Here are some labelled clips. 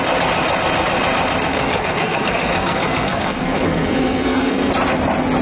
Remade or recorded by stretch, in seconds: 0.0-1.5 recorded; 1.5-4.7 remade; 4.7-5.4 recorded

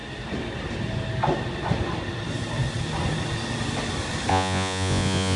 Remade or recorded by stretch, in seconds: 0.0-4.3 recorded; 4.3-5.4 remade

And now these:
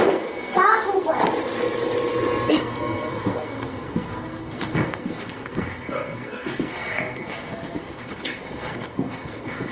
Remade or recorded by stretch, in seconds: 0.0-1.2 remade; 1.2-2.5 recorded; 2.5-9.7 remade

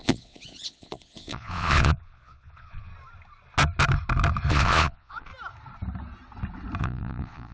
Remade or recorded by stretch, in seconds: 0.0-2.9 remade; 2.9-4.5 recorded; 4.5-5.3 remade; 5.3-6.8 recorded; 6.8-7.5 remade

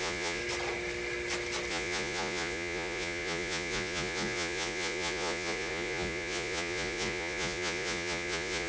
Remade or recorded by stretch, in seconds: 0.0-0.4 remade; 0.4-1.7 recorded; 1.7-8.7 remade

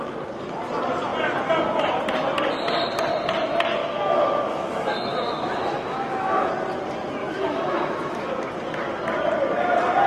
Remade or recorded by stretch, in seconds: 0.0-3.8 recorded; 3.8-6.5 remade; 6.5-7.2 recorded; 7.2-8.3 remade; 8.3-10.1 recorded

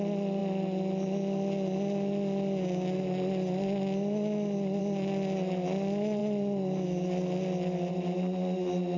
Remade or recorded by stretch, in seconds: 0.0-9.0 recorded

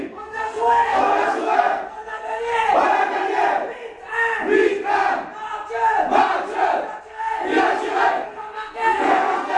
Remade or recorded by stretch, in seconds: 0.0-2.5 remade; 2.5-7.0 recorded; 7.0-7.4 remade; 7.4-8.1 recorded; 8.1-9.6 remade